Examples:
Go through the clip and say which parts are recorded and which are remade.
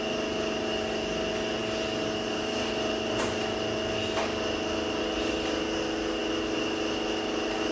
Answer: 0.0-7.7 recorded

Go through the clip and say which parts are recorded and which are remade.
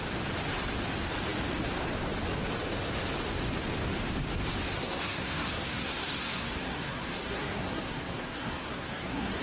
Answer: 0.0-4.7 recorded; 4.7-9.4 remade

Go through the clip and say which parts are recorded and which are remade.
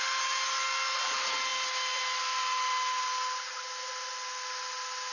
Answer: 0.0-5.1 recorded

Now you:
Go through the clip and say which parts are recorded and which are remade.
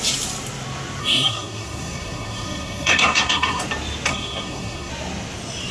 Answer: 0.0-1.0 recorded; 1.0-3.6 remade; 3.6-4.1 recorded; 4.1-4.9 remade; 4.9-5.7 recorded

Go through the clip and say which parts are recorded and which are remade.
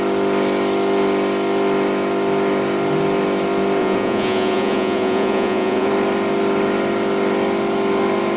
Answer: 0.0-3.8 recorded; 3.8-5.9 remade; 5.9-8.4 recorded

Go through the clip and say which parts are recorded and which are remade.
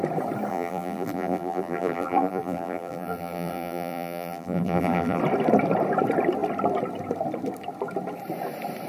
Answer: 0.0-0.5 recorded; 0.5-5.2 remade; 5.2-8.9 recorded